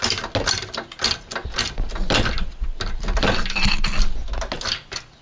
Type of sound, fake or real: real